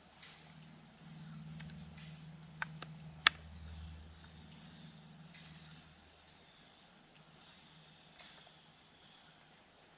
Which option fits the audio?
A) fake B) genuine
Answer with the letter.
A